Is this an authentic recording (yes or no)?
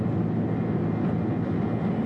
yes